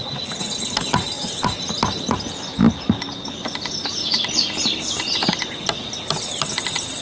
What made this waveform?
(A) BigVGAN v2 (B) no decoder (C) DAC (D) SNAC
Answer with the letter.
B